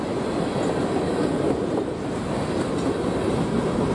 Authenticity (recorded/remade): recorded